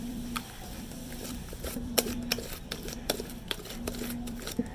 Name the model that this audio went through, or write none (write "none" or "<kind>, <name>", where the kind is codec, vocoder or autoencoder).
vocoder, BigVGAN v2